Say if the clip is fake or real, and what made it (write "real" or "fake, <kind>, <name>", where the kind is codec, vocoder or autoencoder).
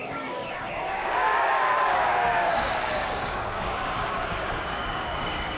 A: fake, codec, DAC